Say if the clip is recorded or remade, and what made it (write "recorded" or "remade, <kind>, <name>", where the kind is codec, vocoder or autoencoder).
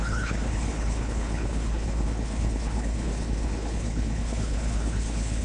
remade, codec, HILCodec